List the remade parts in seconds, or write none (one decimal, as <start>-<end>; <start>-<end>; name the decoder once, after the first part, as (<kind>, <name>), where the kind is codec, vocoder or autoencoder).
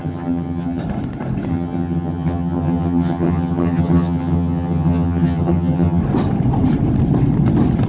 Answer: 0.0-0.8 (vocoder, HiFi-GAN); 1.5-6.0